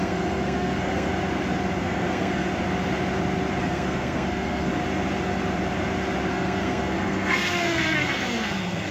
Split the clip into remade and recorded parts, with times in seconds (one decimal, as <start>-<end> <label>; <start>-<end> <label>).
0.0-1.1 remade; 1.1-1.8 recorded; 1.8-2.5 remade; 2.5-3.6 recorded; 3.6-4.7 remade; 4.7-6.3 recorded; 6.3-8.9 remade